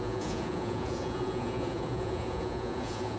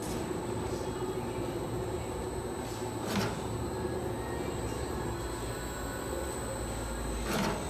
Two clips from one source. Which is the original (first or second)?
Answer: second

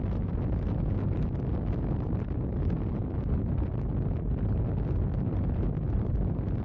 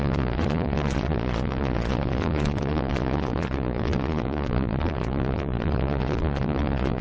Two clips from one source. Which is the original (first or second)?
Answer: first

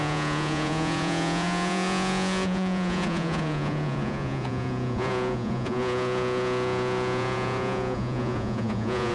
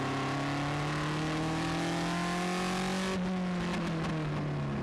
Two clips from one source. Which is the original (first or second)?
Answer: second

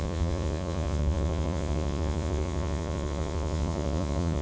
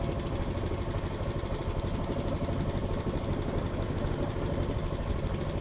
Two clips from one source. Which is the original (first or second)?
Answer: second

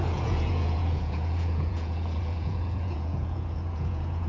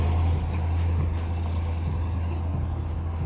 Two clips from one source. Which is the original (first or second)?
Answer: second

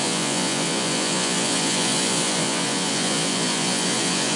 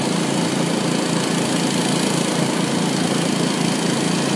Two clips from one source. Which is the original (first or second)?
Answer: second